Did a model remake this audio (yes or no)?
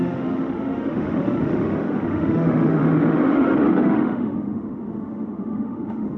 yes